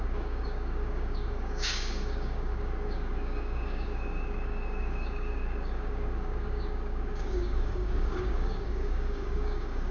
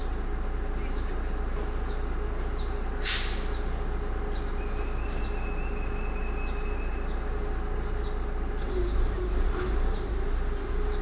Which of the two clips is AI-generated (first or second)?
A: first